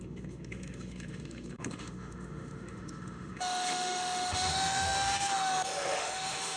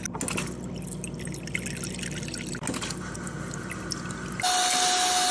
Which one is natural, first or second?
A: second